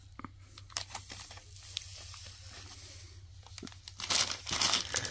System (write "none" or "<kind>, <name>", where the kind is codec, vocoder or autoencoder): none